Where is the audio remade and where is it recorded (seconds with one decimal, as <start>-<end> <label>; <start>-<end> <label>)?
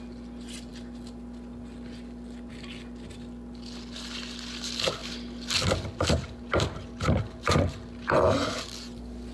0.0-9.3 recorded